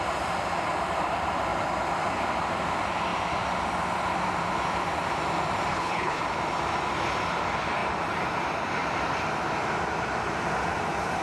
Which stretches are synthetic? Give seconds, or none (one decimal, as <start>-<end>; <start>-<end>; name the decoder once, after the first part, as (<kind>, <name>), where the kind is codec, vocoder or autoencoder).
5.7-6.2 (codec, HILCodec)